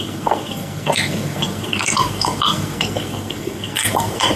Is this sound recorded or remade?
remade